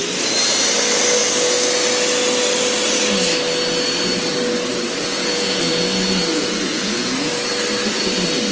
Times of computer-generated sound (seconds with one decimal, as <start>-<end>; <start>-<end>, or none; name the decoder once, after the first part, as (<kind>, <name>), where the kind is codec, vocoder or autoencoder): 5.0-5.6 (vocoder, Vocos); 6.3-7.3